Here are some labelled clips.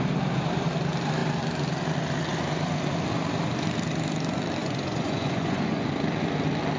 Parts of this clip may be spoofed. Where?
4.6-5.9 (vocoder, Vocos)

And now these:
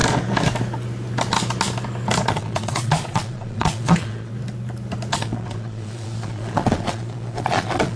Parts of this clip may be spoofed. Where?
2.3-4.3 (vocoder, Vocos); 5.1-8.0

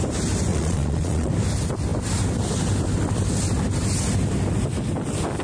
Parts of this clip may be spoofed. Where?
0.5-1.3 (vocoder, Vocos)

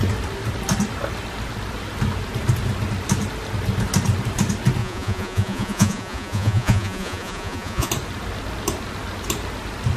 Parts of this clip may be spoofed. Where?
4.8-7.9 (vocoder, Vocos)

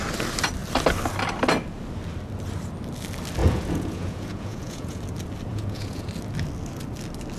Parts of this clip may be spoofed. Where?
3.4-5.0 (vocoder, Vocos); 5.5-6.1

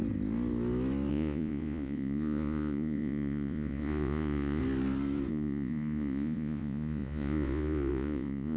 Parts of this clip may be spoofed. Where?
1.1-4.6 (vocoder, Vocos); 5.3-8.6

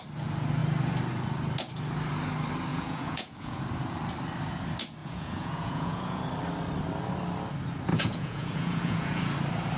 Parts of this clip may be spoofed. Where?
2.7-3.6 (vocoder, Vocos); 5.0-6.2; 7.9-9.2

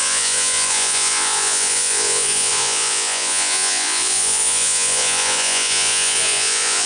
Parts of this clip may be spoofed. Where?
0.0-6.9 (vocoder, Vocos)